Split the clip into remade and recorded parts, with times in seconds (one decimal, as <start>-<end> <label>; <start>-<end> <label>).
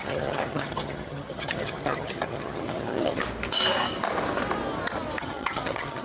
0.0-3.2 remade; 3.2-5.2 recorded; 5.2-6.0 remade